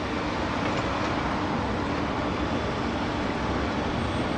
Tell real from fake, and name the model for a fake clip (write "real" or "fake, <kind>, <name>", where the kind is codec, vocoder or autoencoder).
real